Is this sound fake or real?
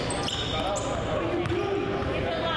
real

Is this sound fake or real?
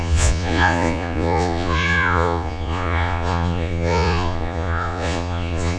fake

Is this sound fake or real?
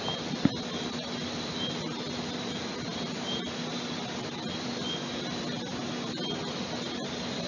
real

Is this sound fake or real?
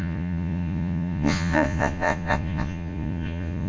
fake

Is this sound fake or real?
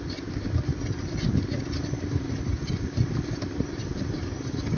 real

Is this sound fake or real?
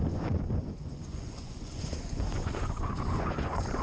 fake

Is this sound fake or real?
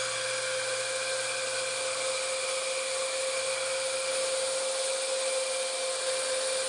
real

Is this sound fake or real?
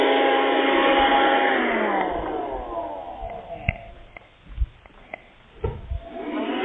real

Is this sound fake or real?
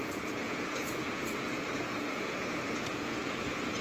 fake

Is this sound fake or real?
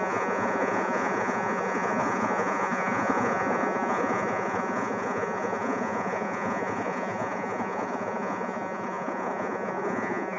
fake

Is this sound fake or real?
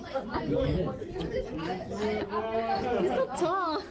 real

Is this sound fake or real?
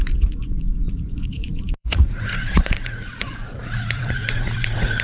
fake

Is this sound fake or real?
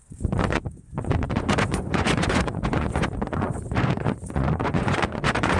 fake